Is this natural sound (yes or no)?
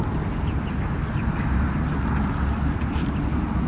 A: yes